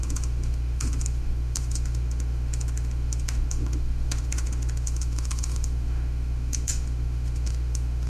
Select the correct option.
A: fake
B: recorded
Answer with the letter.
A